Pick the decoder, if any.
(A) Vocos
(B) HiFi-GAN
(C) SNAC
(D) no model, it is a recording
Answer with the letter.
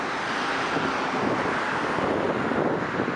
D